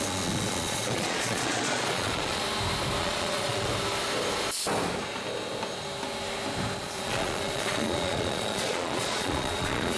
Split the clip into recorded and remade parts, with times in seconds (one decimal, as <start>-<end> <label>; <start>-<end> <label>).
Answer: 0.0-2.4 remade; 2.4-3.0 recorded; 3.0-3.7 remade; 3.7-6.8 recorded; 6.8-10.0 remade